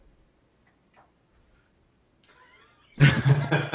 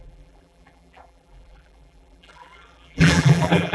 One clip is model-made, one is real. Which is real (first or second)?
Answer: first